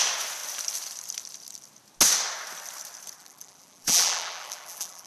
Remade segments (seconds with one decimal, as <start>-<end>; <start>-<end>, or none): 3.2-5.1